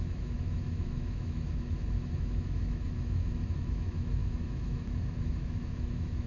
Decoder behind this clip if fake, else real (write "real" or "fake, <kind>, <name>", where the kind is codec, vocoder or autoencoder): fake, autoencoder, DAC-VAE